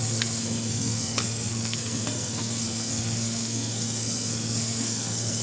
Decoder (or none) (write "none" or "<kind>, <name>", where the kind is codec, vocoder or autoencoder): codec, SNAC